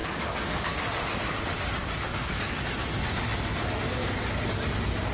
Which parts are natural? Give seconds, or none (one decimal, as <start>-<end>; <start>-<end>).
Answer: 1.4-1.8; 2.6-5.1